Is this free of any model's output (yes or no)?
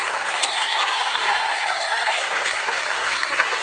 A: no